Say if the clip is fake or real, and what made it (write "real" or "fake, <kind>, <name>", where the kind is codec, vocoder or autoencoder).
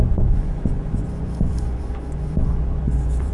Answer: fake, vocoder, Vocos